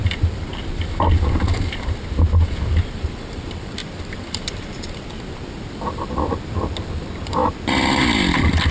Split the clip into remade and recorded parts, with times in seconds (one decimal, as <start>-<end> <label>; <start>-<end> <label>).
0.0-3.8 remade; 3.8-5.2 recorded; 5.2-7.4 remade; 7.4-8.0 recorded; 8.0-8.7 remade